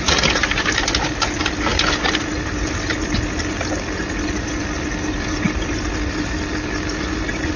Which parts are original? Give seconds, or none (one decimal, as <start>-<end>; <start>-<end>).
0.0-7.6